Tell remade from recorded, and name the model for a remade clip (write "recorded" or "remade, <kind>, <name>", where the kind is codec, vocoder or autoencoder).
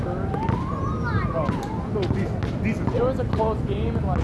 recorded